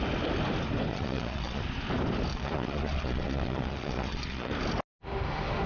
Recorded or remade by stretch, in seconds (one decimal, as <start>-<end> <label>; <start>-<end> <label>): 0.0-0.9 recorded; 0.9-1.6 remade; 1.6-2.3 recorded; 2.3-4.5 remade; 4.5-5.7 recorded